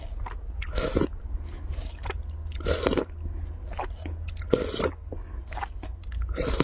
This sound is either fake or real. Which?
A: real